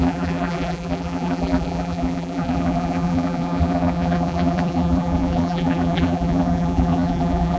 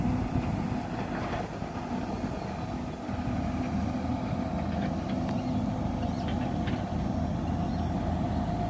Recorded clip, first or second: second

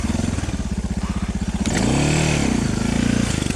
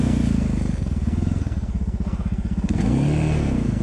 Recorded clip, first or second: first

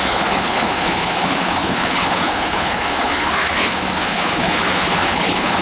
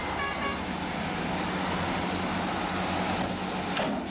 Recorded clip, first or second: second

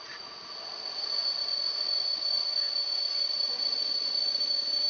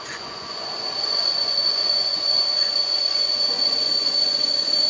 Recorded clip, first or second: first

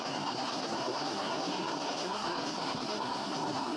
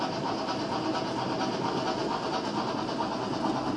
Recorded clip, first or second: second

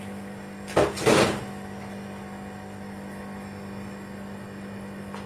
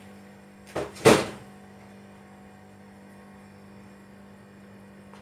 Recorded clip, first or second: first